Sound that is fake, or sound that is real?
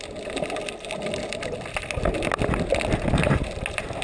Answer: real